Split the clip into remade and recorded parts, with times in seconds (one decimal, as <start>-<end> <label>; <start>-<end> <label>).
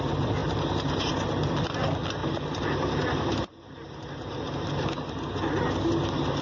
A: 0.0-0.4 recorded; 0.4-1.1 remade; 1.1-2.2 recorded; 2.2-4.5 remade; 4.5-6.4 recorded